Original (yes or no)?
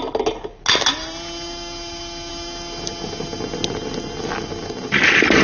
yes